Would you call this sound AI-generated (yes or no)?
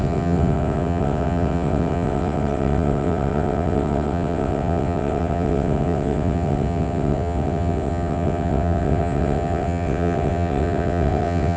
yes